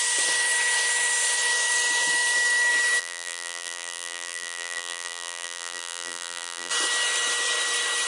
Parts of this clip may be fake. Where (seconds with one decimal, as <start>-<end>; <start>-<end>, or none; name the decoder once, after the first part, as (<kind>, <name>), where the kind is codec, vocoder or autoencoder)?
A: 3.0-6.7 (vocoder, BigVGAN v2)